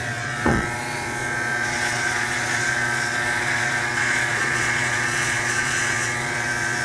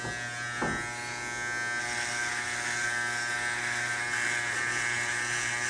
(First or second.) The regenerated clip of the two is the first